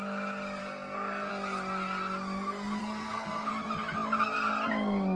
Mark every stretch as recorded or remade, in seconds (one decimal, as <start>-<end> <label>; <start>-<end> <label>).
0.0-0.6 recorded; 0.6-1.3 remade; 1.3-2.8 recorded; 2.8-3.5 remade; 3.5-5.2 recorded